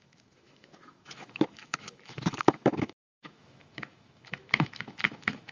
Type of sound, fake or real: fake